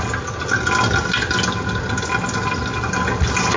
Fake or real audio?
real